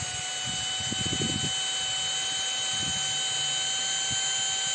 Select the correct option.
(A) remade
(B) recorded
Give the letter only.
B